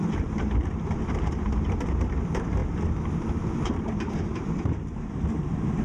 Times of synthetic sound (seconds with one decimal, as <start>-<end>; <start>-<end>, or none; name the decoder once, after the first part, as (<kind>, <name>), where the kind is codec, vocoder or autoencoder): 0.0-2.6 (vocoder, BigVGAN v2); 3.5-5.8